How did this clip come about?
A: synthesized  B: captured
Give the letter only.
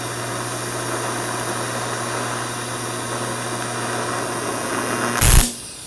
B